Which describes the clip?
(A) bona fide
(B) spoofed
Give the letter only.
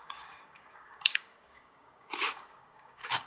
B